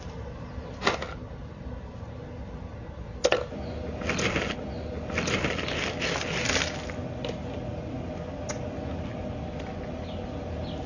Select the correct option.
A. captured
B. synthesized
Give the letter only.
A